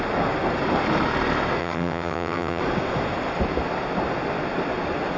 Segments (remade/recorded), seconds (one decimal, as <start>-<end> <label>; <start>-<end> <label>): 0.0-1.6 recorded; 1.6-2.6 remade; 2.6-5.2 recorded